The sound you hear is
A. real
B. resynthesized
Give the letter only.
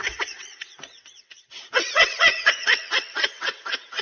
B